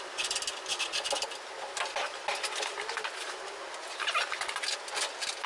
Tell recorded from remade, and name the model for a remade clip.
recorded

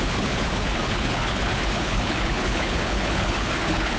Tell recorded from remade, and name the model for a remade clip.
remade, codec, HILCodec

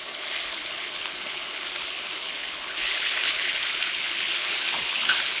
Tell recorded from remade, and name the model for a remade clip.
remade, codec, HILCodec